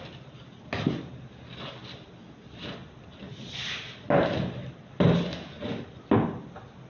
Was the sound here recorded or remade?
recorded